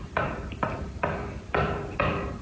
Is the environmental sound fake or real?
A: fake